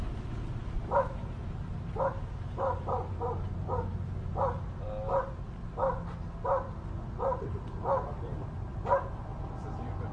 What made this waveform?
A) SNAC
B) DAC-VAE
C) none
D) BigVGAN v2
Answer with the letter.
C